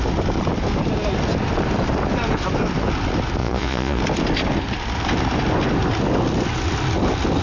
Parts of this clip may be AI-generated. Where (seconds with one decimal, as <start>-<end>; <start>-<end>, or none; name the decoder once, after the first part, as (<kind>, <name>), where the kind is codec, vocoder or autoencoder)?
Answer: 3.4-4.0 (vocoder, Vocos)

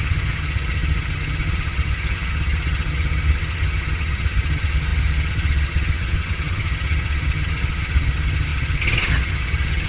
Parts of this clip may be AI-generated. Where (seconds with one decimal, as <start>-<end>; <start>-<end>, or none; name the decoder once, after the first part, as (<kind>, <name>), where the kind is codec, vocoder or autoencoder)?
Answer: 0.0-9.9 (vocoder, HiFi-GAN)

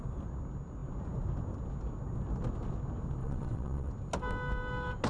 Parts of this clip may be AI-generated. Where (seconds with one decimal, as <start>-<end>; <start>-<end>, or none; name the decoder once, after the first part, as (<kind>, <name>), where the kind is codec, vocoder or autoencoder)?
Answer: 3.2-3.9 (vocoder, WaveNeXt)

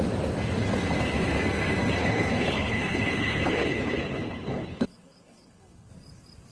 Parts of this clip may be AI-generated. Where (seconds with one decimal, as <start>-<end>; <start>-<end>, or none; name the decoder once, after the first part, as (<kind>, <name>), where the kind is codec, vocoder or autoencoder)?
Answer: 2.0-5.9 (codec, HILCodec)

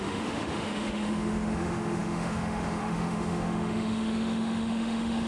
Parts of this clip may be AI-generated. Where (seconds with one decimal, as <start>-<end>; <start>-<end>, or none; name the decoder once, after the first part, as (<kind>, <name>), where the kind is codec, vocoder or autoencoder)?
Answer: 0.0-5.3 (autoencoder, DAC-VAE)

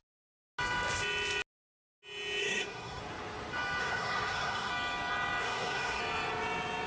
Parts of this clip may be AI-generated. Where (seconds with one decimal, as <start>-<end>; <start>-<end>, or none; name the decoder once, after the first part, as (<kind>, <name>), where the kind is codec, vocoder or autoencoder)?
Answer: 2.4-3.0 (codec, SNAC); 3.8-4.7; 5.4-6.0